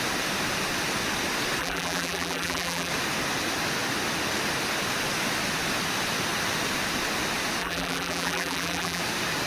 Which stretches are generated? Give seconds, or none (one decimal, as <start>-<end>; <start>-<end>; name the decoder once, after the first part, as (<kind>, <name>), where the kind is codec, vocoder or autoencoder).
1.6-2.9 (vocoder, BigVGAN v2); 7.6-9.0